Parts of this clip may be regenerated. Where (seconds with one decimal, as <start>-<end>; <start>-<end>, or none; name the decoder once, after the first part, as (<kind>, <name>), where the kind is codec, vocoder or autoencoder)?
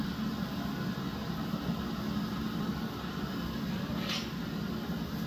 none